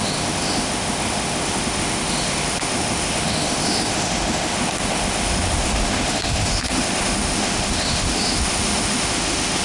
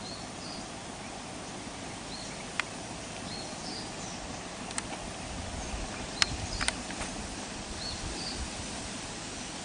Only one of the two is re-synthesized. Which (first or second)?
first